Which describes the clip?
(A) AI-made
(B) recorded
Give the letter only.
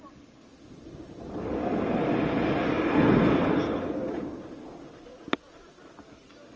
B